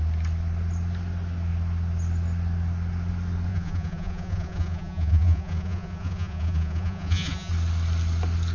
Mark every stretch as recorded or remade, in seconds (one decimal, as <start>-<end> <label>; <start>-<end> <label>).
0.0-3.5 recorded; 3.5-7.5 remade; 7.5-8.5 recorded